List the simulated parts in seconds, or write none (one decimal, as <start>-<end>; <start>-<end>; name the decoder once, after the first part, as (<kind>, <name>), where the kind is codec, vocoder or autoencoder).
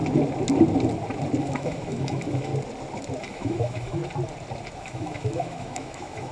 1.4-2.5 (autoencoder, DAC-VAE); 3.2-4.0; 4.8-6.3